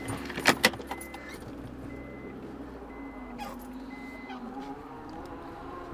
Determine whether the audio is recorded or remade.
recorded